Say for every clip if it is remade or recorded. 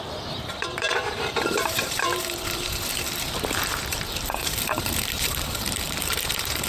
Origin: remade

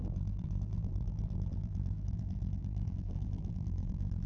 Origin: remade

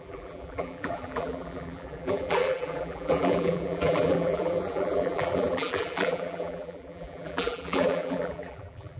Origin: remade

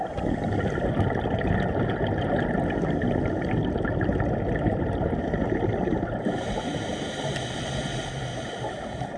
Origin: recorded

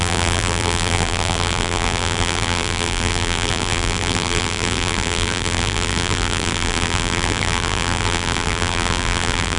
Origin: remade